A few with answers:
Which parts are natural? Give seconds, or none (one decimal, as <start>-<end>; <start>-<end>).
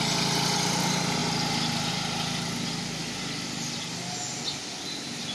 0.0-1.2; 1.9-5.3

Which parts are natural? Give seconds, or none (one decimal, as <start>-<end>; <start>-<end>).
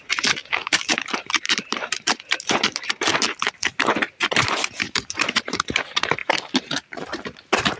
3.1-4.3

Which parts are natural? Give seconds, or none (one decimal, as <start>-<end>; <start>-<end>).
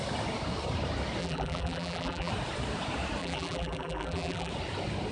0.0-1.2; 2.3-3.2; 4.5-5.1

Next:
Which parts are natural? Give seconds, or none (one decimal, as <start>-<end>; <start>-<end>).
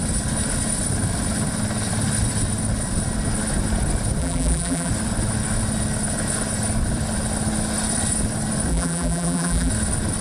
0.0-4.2; 4.9-8.7; 9.7-10.2